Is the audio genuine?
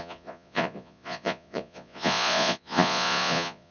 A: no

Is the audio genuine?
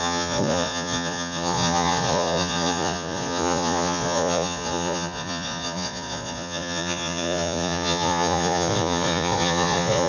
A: no